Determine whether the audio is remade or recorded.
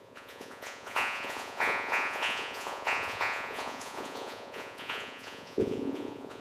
remade